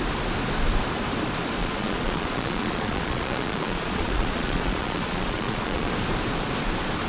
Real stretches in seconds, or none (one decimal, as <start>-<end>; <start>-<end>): 0.0-1.6; 5.9-7.1